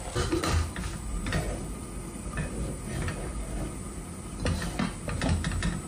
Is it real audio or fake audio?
real